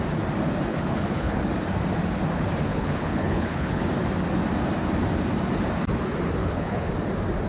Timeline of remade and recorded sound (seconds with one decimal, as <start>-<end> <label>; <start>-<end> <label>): 0.0-0.7 recorded; 0.7-1.4 remade; 1.4-2.7 recorded; 2.7-3.8 remade; 3.8-6.4 recorded; 6.4-6.9 remade; 6.9-7.5 recorded